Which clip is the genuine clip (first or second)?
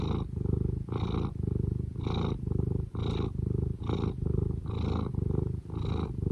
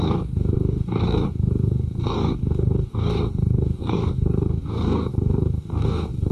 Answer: first